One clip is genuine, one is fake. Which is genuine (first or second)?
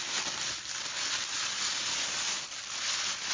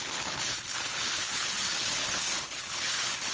first